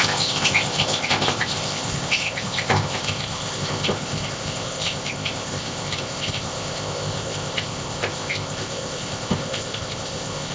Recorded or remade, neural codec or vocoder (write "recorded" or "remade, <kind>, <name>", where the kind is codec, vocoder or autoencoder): remade, codec, ZipCodec